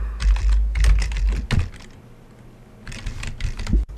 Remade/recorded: recorded